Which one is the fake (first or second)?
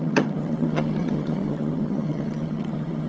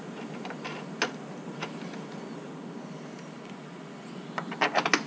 first